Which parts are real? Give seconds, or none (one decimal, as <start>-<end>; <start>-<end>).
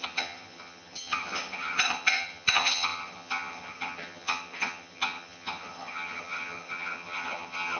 none